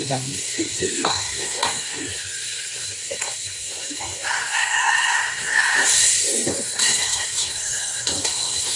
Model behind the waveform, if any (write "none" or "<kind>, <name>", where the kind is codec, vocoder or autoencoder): codec, SNAC